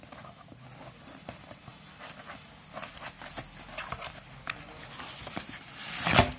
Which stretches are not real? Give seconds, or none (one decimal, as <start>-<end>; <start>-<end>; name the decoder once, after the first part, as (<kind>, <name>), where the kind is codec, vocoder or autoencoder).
none